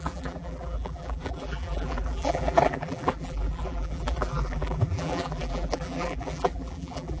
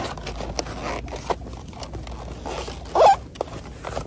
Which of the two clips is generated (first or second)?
first